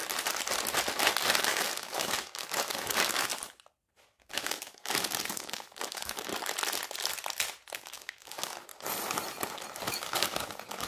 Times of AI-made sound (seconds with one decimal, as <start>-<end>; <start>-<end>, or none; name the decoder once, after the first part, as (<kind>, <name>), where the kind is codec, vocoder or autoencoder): 1.4-3.3 (codec, DAC); 4.2-6.3; 7.8-8.7; 9.9-10.9